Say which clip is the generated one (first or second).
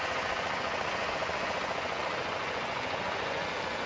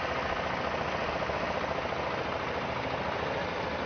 first